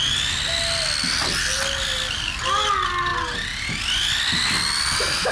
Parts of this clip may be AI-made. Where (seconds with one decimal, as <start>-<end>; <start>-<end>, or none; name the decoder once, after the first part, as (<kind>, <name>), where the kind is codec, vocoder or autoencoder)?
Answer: none